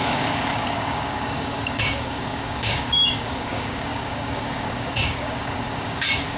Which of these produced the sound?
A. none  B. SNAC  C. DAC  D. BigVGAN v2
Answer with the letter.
C